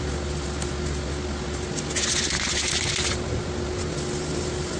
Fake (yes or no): no